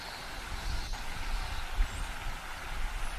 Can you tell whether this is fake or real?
real